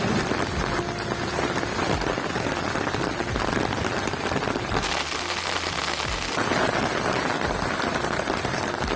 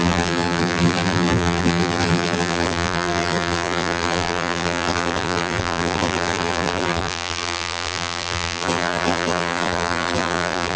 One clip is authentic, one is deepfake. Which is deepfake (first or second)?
second